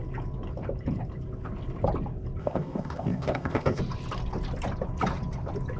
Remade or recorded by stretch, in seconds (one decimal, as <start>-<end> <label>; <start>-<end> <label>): 0.0-2.4 recorded; 2.4-3.8 remade; 3.8-5.8 recorded